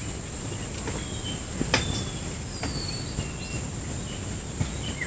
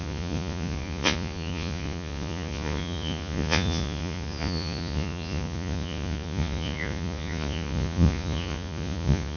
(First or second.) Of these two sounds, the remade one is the second